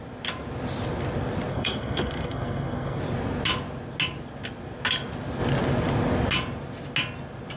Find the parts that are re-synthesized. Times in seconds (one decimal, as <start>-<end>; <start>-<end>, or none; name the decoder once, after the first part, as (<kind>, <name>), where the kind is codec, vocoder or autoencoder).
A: 1.5-3.0 (codec, SNAC)